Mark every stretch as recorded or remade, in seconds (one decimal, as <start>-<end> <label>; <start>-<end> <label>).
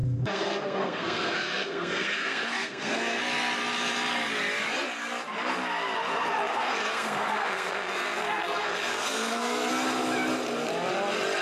0.0-3.2 remade; 3.2-6.5 recorded; 6.5-9.7 remade; 9.7-11.4 recorded